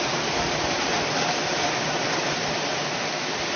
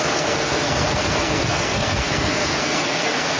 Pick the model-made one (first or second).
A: second